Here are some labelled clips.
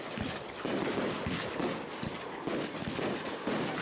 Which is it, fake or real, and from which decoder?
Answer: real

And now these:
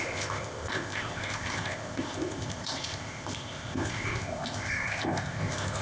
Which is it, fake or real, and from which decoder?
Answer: fake, codec, ZipCodec